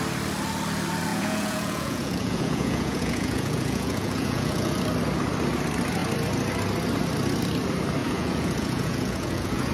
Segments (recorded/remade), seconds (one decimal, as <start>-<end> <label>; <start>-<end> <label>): 0.0-1.1 recorded; 1.1-4.8 remade; 4.8-8.0 recorded; 8.0-9.7 remade